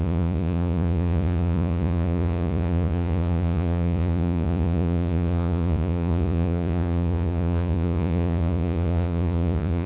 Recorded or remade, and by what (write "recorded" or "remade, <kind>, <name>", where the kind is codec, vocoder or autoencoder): remade, vocoder, Vocos